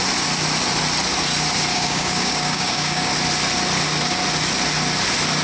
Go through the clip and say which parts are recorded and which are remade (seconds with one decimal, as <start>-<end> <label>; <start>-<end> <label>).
0.0-1.7 recorded; 1.7-3.1 remade; 3.1-5.4 recorded